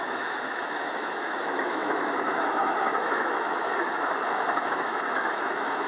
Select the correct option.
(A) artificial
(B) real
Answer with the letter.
A